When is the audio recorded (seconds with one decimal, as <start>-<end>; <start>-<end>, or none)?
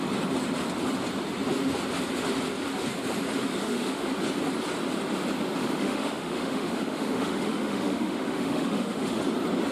0.0-3.5; 4.1-5.6; 9.2-9.7